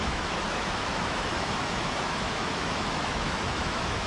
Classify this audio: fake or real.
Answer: fake